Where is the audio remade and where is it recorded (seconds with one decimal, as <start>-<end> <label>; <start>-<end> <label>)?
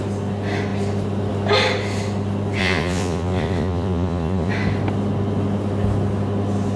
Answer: 0.0-2.6 recorded; 2.6-4.5 remade; 4.5-6.8 recorded